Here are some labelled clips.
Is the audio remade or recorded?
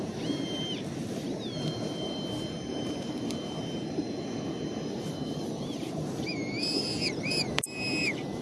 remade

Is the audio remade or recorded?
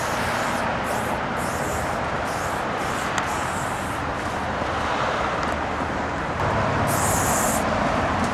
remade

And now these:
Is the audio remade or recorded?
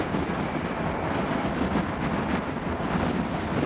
recorded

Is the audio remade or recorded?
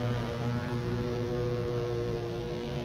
remade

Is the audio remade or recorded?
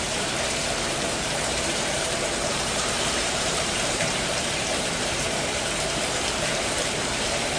remade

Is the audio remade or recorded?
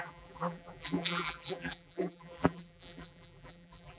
remade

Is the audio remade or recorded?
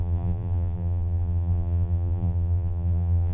remade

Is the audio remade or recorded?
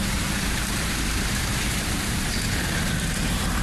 remade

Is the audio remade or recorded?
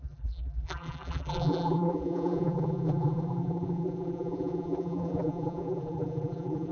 remade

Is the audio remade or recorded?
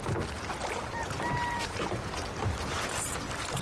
recorded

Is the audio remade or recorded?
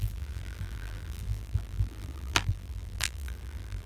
remade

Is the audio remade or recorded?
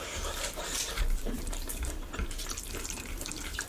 remade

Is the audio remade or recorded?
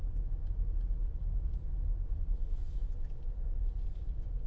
recorded